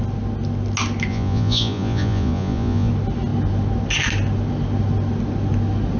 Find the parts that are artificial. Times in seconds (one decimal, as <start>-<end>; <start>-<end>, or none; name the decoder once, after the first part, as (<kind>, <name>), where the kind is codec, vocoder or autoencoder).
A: 1.1-2.9 (vocoder, Vocos)